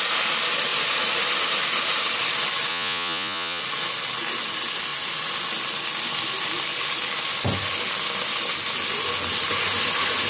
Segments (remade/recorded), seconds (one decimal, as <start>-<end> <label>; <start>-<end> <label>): 0.0-2.7 recorded; 2.7-3.6 remade; 3.6-10.3 recorded

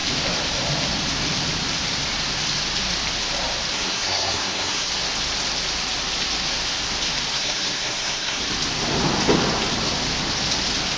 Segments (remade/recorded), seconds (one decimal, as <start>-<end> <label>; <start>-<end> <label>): 0.0-3.7 recorded; 3.7-4.9 remade; 4.9-7.3 recorded; 7.3-8.4 remade; 8.4-11.0 recorded